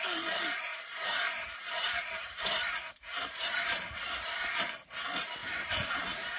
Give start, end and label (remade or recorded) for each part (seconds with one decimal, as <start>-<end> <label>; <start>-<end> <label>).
0.0-0.7 recorded; 0.7-4.5 remade; 4.5-5.4 recorded; 5.4-5.9 remade; 5.9-6.4 recorded